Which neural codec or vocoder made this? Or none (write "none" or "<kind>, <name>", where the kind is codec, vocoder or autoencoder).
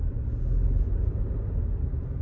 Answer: none